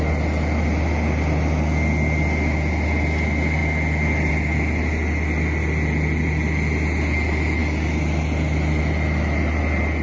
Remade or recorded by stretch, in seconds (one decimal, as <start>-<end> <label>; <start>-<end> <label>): 0.0-10.0 recorded